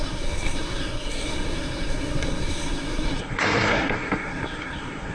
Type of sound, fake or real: fake